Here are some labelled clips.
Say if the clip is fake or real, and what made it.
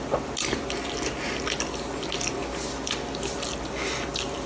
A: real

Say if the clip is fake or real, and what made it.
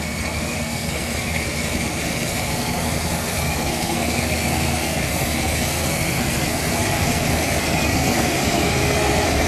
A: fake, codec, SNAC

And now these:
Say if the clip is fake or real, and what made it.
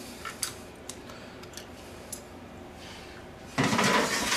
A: real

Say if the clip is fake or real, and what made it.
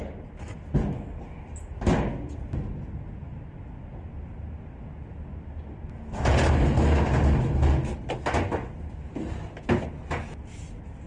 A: real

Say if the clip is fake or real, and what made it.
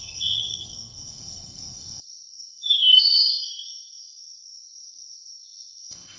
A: fake, codec, SNAC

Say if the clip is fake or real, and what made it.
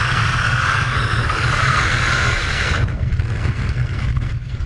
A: fake, codec, SNAC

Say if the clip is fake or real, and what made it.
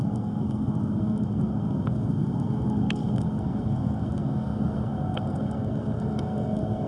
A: fake, codec, SNAC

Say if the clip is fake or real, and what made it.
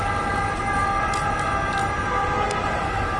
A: real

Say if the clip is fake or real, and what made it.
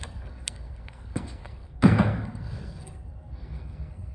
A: fake, codec, SNAC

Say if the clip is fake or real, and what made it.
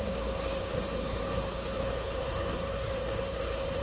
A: fake, codec, SNAC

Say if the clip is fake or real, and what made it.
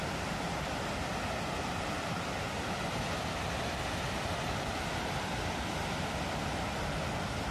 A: real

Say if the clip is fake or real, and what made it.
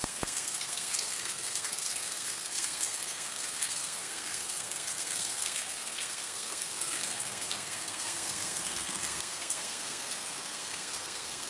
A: fake, codec, SNAC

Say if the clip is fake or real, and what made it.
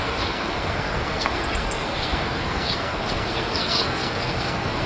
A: fake, codec, SNAC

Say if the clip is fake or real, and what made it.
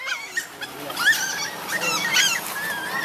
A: real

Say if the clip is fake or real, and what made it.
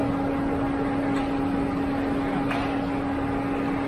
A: real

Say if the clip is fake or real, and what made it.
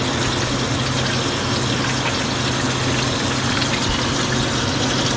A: real